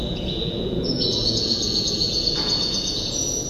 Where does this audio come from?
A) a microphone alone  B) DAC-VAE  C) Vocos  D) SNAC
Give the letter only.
C